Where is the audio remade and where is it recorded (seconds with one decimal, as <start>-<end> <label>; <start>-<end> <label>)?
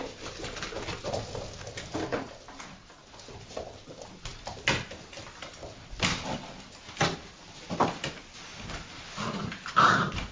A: 0.0-10.3 recorded